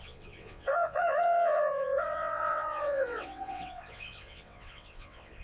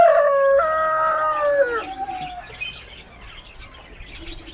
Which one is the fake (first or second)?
first